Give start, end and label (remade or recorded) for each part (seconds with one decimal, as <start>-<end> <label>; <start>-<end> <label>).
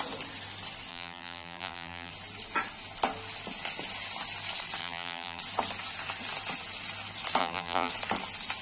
0.0-0.9 recorded; 0.9-2.1 remade; 2.1-4.8 recorded; 4.8-5.4 remade; 5.4-7.4 recorded; 7.4-7.9 remade; 7.9-8.6 recorded